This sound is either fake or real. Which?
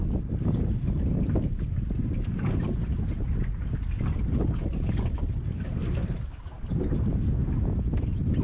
real